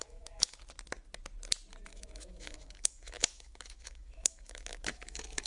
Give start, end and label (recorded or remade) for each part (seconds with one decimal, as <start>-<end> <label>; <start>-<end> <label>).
0.0-0.6 remade; 0.6-1.9 recorded; 1.9-5.5 remade